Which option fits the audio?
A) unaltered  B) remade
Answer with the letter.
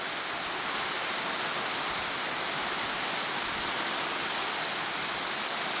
A